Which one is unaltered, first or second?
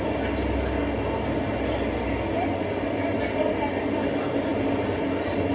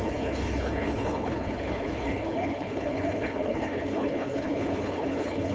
first